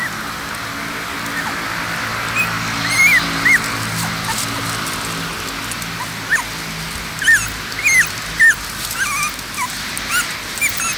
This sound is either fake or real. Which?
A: real